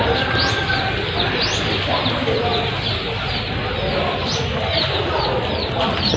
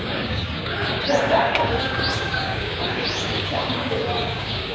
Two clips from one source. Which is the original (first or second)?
first